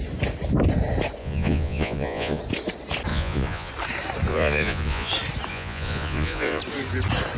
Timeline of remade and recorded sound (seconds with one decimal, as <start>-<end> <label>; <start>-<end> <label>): 0.0-1.2 recorded; 1.2-2.4 remade; 2.4-3.1 recorded; 3.1-3.7 remade; 3.7-4.3 recorded; 4.3-5.1 remade; 5.1-5.5 recorded; 5.5-6.6 remade; 6.6-7.4 recorded